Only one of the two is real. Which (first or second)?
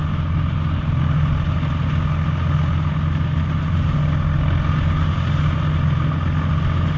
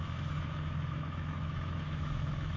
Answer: first